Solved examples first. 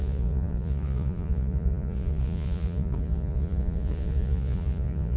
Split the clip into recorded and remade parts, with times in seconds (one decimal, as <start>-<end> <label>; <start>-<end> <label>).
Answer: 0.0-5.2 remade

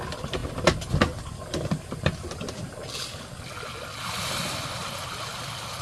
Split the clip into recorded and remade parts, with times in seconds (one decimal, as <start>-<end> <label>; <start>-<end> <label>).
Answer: 0.0-5.8 recorded

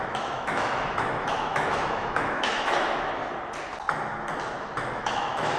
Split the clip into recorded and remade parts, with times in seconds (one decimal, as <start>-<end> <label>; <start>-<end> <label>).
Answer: 0.0-3.2 remade; 3.2-4.8 recorded; 4.8-5.6 remade